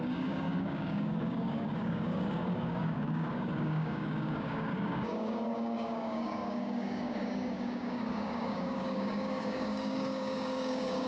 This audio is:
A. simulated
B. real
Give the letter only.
A